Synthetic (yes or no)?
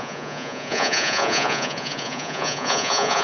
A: yes